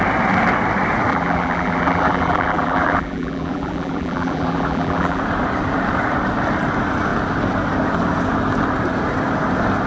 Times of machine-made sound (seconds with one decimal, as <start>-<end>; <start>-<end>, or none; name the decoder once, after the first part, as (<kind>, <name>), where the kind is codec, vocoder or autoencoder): 1.1-5.2 (vocoder, BigVGAN v2)